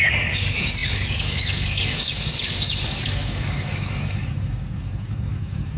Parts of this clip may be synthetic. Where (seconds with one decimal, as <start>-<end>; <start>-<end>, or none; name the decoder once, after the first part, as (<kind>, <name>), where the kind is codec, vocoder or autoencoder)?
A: 0.0-5.8 (codec, DAC)